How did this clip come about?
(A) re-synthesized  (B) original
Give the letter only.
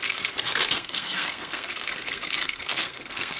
A